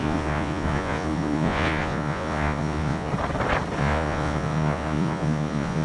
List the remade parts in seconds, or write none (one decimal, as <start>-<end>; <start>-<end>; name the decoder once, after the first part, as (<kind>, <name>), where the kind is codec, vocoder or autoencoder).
0.0-3.1 (vocoder, Vocos); 3.8-5.8